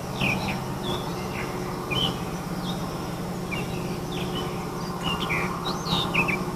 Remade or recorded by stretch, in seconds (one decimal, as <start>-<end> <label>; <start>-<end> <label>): 0.0-6.6 recorded